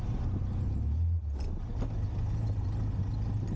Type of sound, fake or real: real